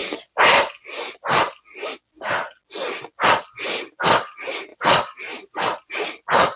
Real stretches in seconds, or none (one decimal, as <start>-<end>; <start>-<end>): 0.6-4.7; 5.6-6.6